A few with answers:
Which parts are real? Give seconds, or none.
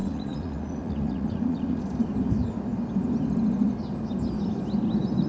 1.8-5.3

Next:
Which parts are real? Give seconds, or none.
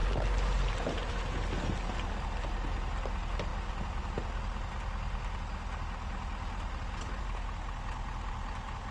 0.0-8.9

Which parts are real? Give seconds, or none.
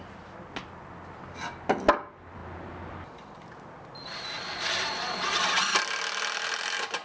0.0-7.0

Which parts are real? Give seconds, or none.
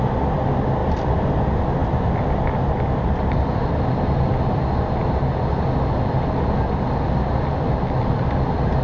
0.0-0.8; 1.4-8.8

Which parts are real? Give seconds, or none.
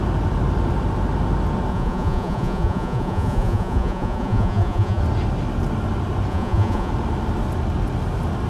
0.0-1.7; 5.0-6.3; 6.9-8.5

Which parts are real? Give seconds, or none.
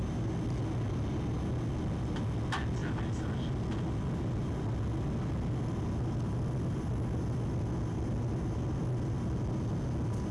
0.0-10.3